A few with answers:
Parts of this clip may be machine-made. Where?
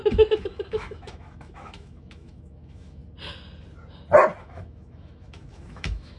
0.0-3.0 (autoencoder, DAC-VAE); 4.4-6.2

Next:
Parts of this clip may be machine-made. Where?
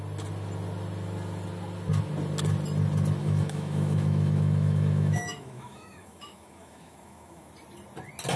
3.2-7.5 (autoencoder, DAC-VAE)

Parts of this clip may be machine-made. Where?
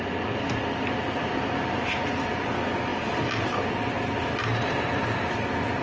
none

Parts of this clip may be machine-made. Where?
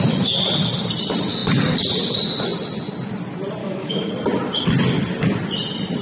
3.6-4.1 (autoencoder, DAC-VAE)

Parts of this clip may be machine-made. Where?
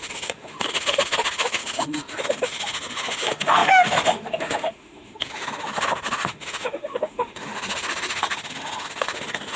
0.0-9.6 (autoencoder, DAC-VAE)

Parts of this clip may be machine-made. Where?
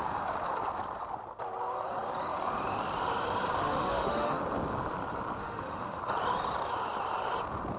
3.6-4.4 (autoencoder, DAC-VAE); 5.4-6.0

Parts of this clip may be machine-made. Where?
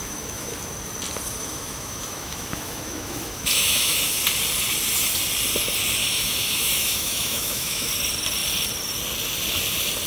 0.0-0.6 (autoencoder, DAC-VAE); 1.4-4.2; 6.0-7.9